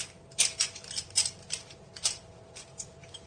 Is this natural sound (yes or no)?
no